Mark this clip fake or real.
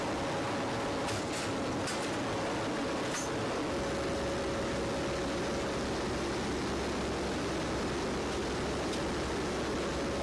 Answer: real